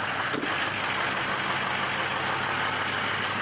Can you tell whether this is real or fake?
real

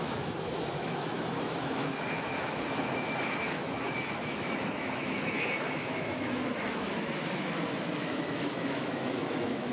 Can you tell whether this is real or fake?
fake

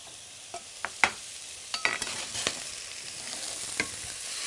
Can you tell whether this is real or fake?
fake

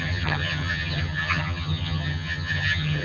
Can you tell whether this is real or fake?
fake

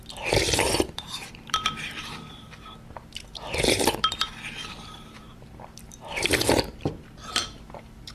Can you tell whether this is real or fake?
fake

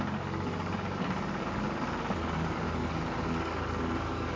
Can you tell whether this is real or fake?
fake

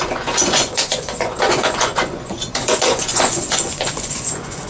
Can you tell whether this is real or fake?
fake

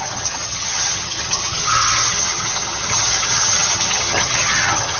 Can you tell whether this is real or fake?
fake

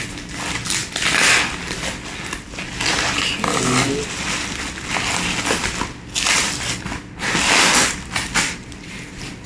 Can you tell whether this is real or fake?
real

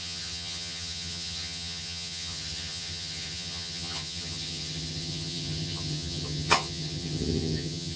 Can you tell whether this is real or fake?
fake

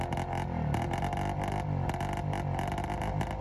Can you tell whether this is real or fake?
real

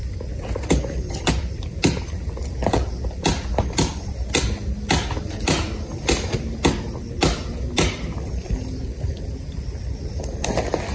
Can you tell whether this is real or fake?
real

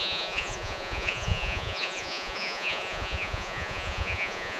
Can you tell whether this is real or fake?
fake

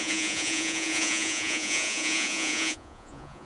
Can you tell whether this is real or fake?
fake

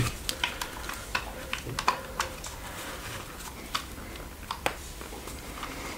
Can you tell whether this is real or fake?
real